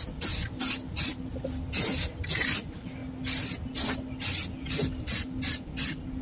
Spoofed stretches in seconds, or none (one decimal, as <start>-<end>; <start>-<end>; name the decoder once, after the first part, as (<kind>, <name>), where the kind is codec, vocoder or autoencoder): none